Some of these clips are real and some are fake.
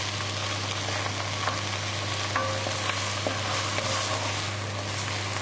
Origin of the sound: real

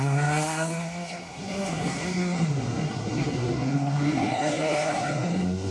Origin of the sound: fake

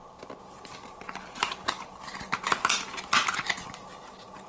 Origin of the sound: real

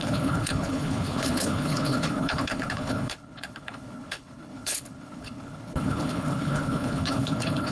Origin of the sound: fake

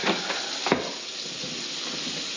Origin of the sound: real